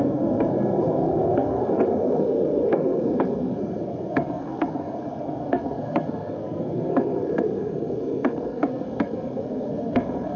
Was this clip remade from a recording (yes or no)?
yes